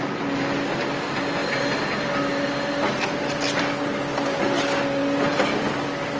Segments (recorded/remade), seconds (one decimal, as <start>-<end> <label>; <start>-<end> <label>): 0.0-6.2 recorded